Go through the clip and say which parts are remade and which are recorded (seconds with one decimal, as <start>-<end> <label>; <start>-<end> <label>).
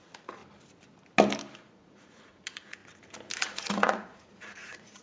0.0-0.4 remade; 0.4-1.6 recorded; 1.6-2.8 remade; 2.8-3.4 recorded; 3.4-5.0 remade